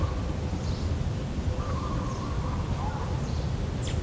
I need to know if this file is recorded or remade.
recorded